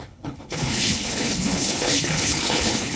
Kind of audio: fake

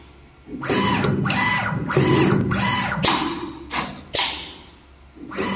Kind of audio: real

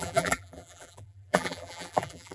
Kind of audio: fake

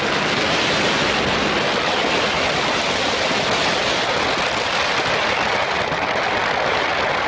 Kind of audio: real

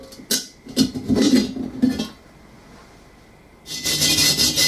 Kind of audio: real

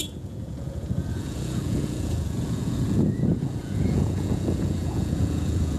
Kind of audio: fake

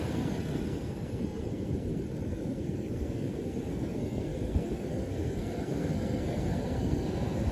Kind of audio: fake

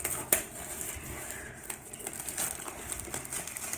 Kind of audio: real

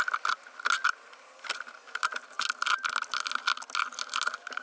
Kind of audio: real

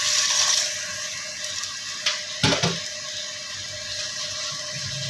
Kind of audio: real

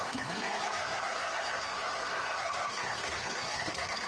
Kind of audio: fake